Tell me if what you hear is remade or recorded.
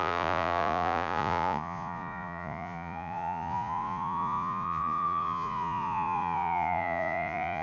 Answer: remade